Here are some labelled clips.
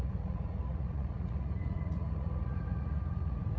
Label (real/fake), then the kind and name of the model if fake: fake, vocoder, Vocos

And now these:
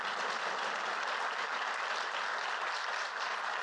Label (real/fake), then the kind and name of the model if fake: real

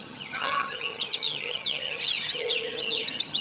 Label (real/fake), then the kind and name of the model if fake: fake, vocoder, HiFi-GAN